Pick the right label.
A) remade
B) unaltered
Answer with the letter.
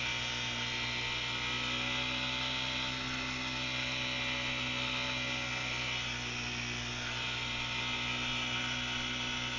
B